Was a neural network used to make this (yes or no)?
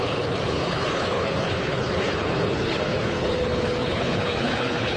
yes